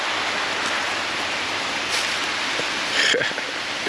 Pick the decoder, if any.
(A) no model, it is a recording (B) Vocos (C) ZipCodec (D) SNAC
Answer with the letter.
A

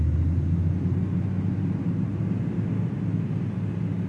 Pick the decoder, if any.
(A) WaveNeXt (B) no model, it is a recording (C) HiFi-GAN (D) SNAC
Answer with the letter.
B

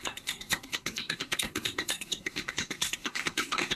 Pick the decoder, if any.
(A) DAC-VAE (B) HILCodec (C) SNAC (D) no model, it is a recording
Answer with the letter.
C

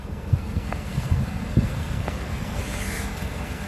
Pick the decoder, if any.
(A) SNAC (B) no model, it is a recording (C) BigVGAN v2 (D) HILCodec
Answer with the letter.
A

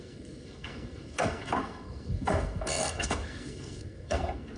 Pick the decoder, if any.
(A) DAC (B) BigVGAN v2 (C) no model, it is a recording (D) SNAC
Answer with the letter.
D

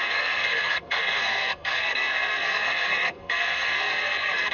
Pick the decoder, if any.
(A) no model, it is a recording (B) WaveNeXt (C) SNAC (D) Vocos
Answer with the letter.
C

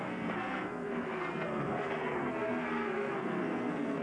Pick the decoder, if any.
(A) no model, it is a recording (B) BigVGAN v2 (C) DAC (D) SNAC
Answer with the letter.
D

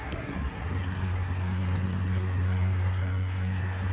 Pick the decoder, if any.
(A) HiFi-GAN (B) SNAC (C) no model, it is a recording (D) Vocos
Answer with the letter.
B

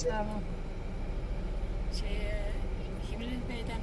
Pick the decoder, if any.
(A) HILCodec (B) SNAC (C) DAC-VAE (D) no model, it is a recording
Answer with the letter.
D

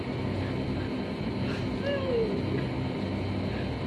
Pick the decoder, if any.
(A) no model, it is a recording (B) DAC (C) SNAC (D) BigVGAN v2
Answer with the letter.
A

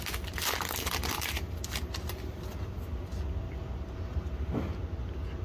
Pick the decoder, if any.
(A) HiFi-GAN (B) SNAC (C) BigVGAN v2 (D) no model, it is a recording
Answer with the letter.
D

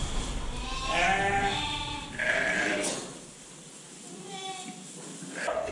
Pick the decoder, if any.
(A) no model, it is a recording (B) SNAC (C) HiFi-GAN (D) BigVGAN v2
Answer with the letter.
A